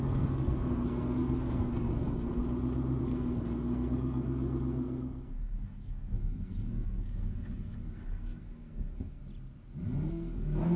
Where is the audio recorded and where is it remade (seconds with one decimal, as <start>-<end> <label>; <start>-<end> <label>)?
0.0-2.4 remade; 2.4-3.0 recorded; 3.0-9.2 remade; 9.2-10.1 recorded; 10.1-10.8 remade